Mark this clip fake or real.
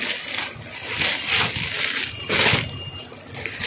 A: real